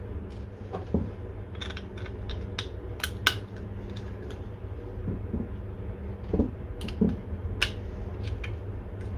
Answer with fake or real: real